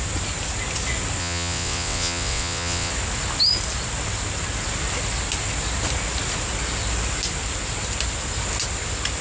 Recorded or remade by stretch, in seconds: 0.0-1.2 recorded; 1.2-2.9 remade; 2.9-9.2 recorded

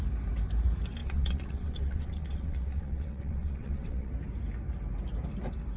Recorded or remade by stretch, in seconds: 0.0-1.0 recorded; 1.0-4.1 remade; 4.1-5.8 recorded

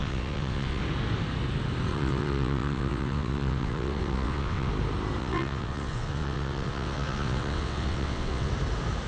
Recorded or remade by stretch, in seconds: 0.0-0.8 remade; 0.8-1.9 recorded; 1.9-4.7 remade; 4.7-5.2 recorded; 5.2-8.5 remade; 8.5-9.1 recorded

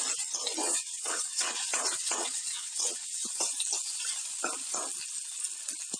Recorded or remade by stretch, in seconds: 0.0-0.6 recorded; 0.6-3.5 remade; 3.5-6.0 recorded